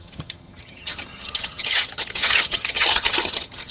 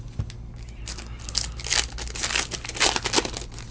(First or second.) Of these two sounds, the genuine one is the second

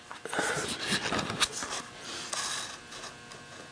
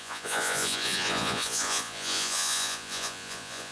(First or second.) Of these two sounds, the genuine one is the first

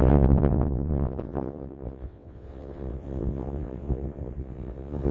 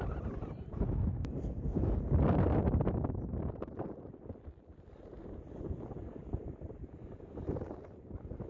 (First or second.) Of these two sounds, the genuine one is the second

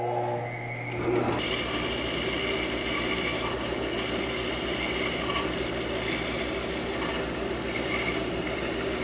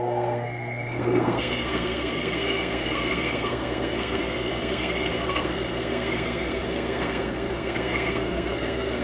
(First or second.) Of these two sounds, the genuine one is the first